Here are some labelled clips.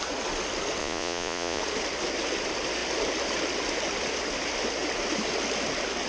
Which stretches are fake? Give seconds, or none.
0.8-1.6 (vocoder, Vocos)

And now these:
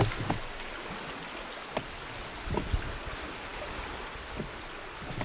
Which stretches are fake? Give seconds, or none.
none

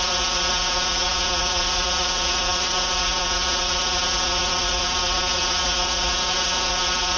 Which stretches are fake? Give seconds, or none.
0.0-7.2 (vocoder, Vocos)

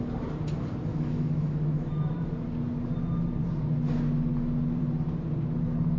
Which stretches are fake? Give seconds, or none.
0.9-2.2 (autoencoder, DAC-VAE)

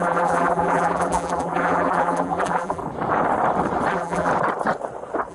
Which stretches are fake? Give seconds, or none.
0.0-2.8 (vocoder, BigVGAN v2); 3.9-4.3

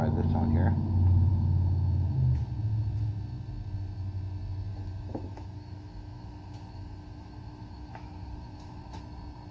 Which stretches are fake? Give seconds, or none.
4.7-9.0 (autoencoder, DAC-VAE)